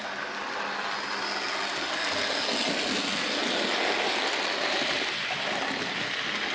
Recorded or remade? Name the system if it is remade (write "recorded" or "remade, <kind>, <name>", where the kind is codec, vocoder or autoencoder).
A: recorded